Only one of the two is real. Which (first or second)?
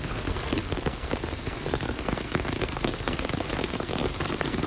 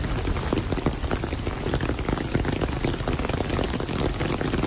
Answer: second